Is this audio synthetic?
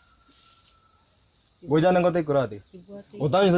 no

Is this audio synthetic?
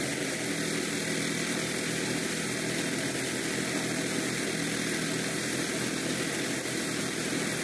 no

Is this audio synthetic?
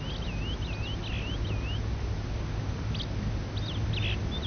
no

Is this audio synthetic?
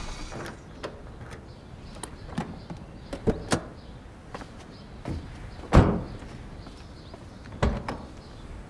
no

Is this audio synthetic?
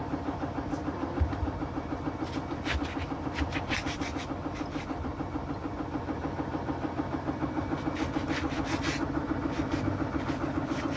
yes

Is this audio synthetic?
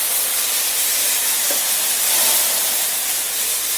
yes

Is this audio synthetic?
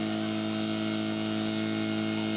no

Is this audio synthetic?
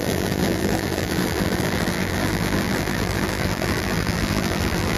yes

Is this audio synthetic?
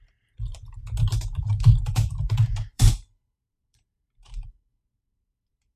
yes